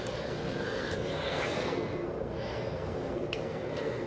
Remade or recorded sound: remade